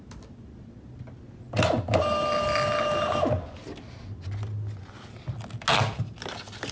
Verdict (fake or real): real